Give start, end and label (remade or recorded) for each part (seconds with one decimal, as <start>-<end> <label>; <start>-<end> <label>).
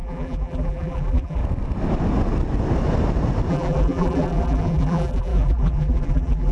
0.0-1.4 remade; 1.4-3.5 recorded; 3.5-6.5 remade